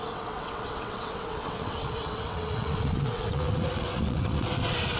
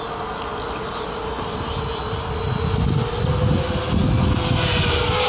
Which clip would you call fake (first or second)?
first